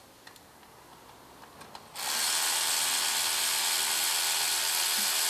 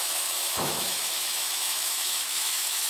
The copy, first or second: second